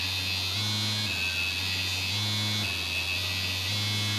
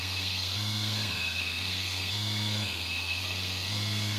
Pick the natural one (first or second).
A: first